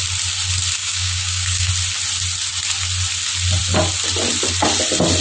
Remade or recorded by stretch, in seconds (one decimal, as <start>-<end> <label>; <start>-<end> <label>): 0.0-0.8 recorded; 0.8-1.7 remade; 1.7-5.2 recorded